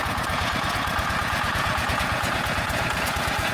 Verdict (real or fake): fake